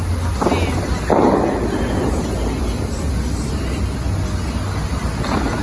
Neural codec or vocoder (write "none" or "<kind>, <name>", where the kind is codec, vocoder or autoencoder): none